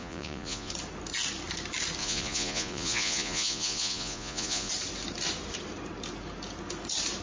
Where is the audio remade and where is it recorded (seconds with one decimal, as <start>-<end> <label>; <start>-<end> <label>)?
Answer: 0.0-0.7 remade; 0.7-2.0 recorded; 2.0-4.7 remade; 4.7-7.2 recorded